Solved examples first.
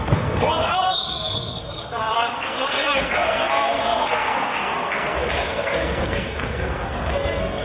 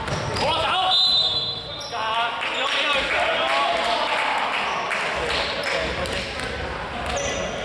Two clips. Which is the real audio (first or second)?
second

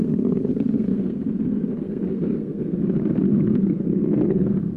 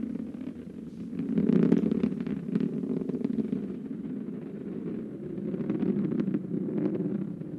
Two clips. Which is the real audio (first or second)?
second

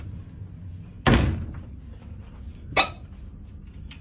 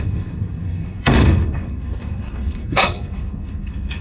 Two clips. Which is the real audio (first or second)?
first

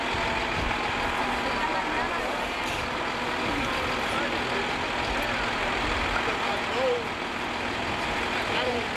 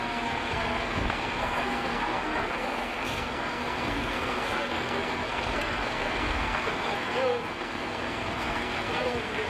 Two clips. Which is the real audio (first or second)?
first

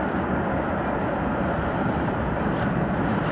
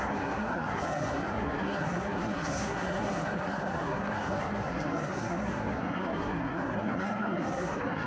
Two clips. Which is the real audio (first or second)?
first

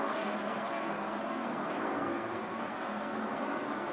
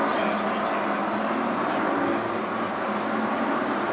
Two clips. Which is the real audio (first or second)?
second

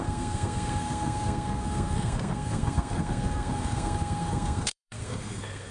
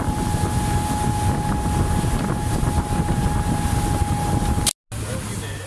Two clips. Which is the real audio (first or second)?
second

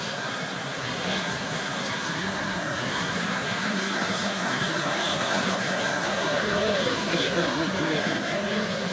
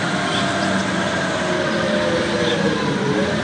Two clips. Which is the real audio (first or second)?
second